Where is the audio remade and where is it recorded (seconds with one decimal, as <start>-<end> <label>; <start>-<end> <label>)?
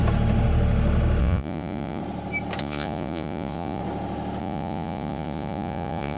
0.0-1.2 recorded; 1.2-2.0 remade; 2.0-2.6 recorded; 2.6-3.8 remade; 3.8-4.4 recorded; 4.4-6.2 remade